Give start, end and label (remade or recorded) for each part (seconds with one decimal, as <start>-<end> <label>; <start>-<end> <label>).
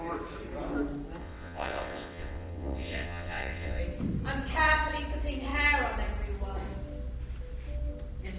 0.0-1.2 recorded; 1.2-3.8 remade; 3.8-8.4 recorded